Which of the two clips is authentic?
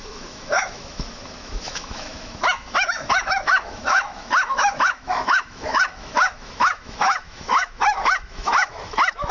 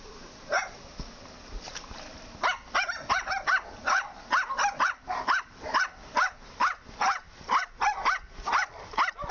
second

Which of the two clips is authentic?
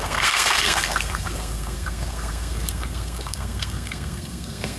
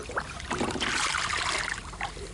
second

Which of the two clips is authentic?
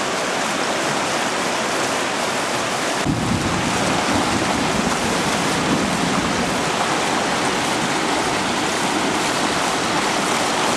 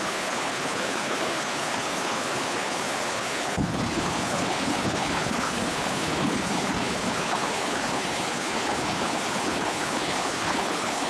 first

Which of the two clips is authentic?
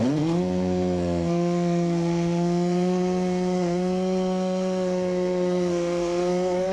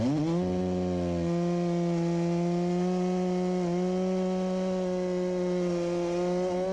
second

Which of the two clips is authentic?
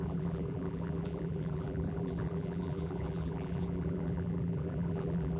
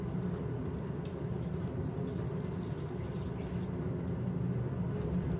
second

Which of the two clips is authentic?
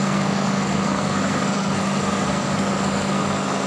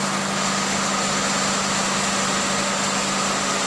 second